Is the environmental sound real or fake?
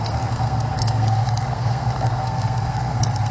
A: fake